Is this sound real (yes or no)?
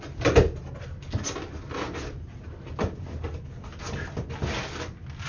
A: yes